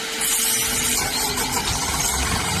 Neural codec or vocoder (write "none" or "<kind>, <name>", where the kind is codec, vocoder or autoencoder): none